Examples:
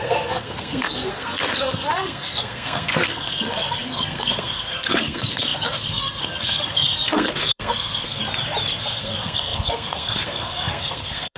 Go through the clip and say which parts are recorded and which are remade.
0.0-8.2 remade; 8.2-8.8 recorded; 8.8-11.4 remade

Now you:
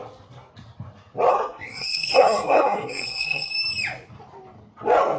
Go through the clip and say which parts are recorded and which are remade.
0.0-1.3 recorded; 1.3-3.5 remade; 3.5-5.2 recorded

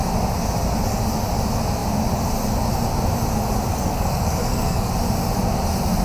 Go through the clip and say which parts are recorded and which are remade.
0.0-3.7 recorded; 3.7-4.9 remade; 4.9-6.0 recorded

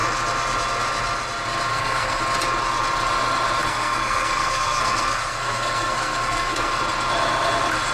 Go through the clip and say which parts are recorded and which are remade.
0.0-1.7 recorded; 1.7-2.2 remade; 2.2-3.6 recorded; 3.6-6.8 remade; 6.8-7.9 recorded

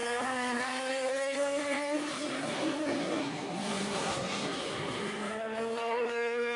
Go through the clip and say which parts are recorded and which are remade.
0.0-6.6 remade

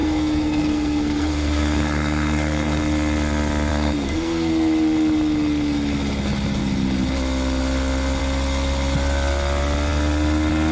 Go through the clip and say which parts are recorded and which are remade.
0.0-2.8 remade; 2.8-3.7 recorded; 3.7-4.5 remade; 4.5-10.7 recorded